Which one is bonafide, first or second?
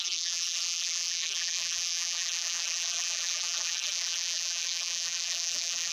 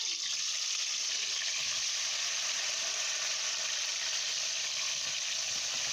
second